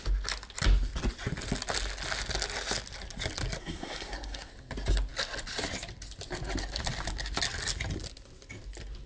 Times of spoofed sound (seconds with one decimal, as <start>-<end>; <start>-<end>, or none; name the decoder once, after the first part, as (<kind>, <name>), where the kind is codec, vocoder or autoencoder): 3.6-4.5 (codec, SNAC)